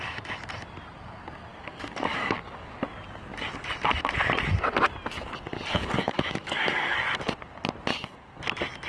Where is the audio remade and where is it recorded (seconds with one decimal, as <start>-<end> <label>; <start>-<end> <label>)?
0.0-1.5 recorded; 1.5-2.7 remade; 2.7-5.7 recorded; 5.7-7.0 remade; 7.0-7.9 recorded; 7.9-8.4 remade; 8.4-8.9 recorded